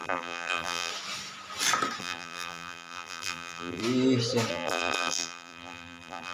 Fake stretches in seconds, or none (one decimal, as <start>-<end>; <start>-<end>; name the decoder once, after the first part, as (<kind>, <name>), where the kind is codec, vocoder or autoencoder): 0.0-0.9 (vocoder, BigVGAN v2); 2.0-3.8; 4.5-6.3